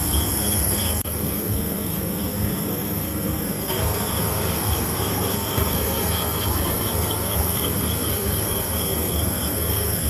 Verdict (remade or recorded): remade